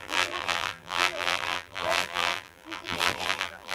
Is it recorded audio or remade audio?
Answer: remade